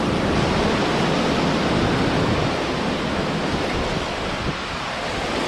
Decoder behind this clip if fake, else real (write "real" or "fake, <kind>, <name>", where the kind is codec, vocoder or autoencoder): real